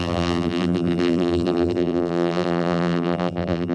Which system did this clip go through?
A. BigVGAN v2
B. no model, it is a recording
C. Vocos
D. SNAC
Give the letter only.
A